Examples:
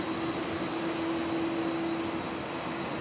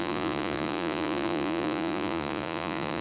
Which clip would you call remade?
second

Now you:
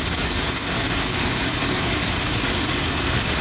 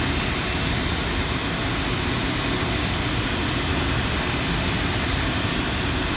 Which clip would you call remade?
first